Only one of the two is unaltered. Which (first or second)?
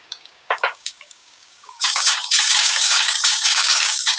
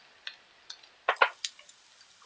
second